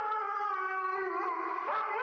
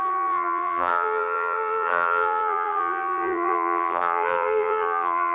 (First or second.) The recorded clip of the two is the first